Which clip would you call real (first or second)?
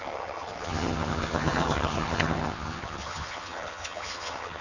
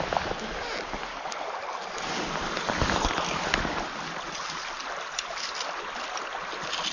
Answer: second